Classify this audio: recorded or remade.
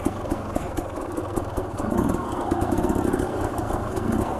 remade